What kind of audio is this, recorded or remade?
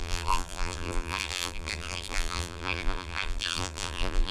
remade